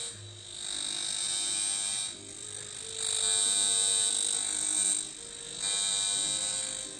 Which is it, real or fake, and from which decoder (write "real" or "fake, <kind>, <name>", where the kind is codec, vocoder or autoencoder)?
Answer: real